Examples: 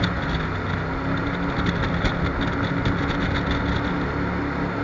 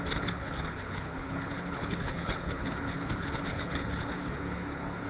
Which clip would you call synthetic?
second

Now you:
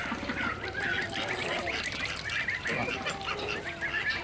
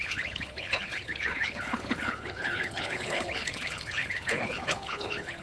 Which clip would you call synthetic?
second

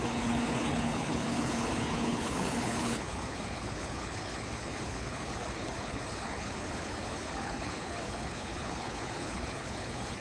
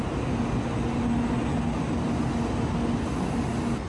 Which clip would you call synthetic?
first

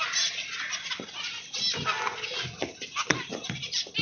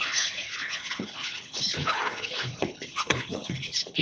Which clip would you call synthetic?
second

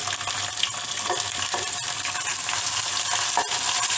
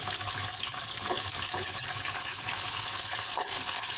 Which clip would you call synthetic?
second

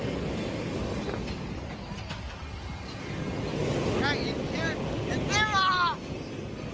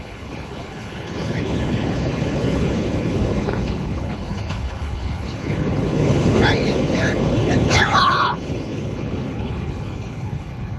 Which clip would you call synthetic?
second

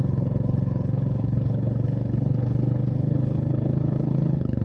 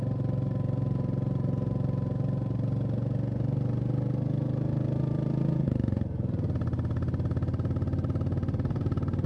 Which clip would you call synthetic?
first